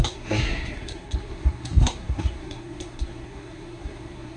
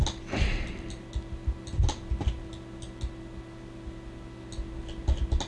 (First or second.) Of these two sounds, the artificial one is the first